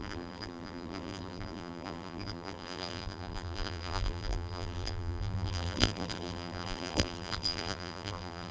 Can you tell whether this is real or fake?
fake